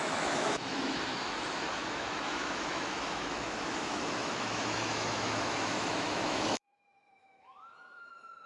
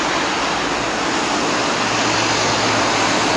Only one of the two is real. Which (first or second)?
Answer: second